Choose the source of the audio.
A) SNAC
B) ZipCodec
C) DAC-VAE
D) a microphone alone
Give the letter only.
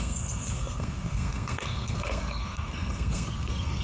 A